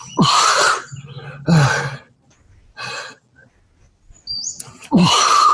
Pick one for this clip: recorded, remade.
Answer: recorded